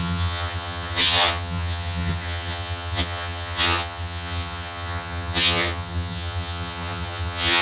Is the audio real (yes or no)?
no